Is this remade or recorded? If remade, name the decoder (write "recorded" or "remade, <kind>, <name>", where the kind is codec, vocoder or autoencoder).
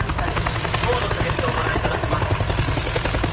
recorded